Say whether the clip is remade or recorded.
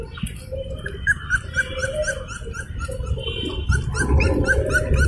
recorded